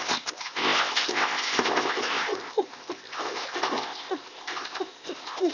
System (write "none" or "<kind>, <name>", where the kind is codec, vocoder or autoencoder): codec, ZipCodec